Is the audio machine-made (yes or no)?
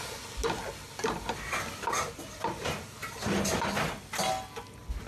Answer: no